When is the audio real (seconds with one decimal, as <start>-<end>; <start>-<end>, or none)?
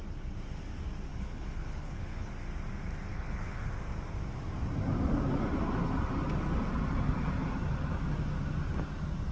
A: 0.0-1.1; 2.3-3.1; 3.7-9.3